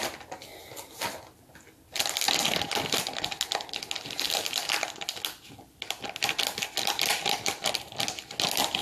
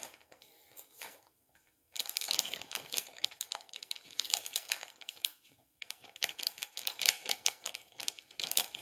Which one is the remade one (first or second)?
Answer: second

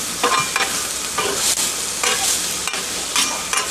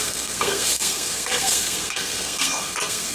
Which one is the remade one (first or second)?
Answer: second